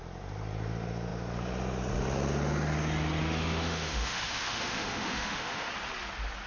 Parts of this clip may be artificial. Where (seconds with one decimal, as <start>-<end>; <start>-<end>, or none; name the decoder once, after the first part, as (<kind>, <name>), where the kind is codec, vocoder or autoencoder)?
3.2-5.7 (autoencoder, DAC-VAE)